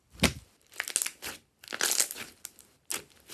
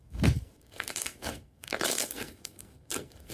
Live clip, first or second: first